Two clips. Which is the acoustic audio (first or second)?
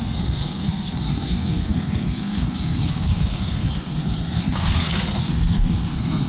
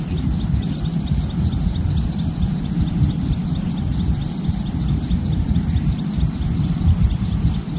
second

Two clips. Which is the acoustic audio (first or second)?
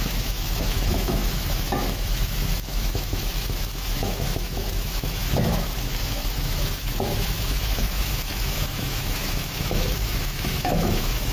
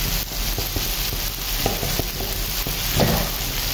second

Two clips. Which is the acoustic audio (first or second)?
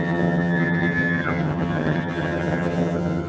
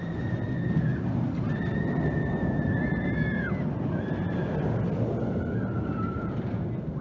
second